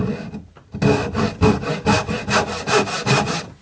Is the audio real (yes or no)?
yes